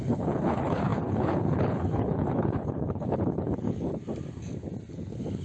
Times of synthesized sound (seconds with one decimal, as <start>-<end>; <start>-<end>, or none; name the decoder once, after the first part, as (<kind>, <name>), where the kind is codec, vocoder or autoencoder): 0.0-4.0 (codec, HILCodec); 4.9-5.4